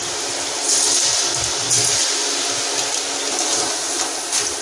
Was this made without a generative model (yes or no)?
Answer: yes